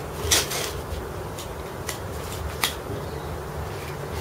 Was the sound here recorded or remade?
recorded